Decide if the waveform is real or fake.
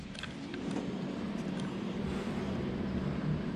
fake